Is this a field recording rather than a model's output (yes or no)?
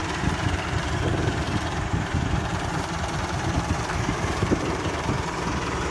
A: no